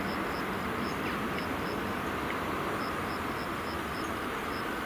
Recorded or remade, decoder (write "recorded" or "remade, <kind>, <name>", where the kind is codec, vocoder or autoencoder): recorded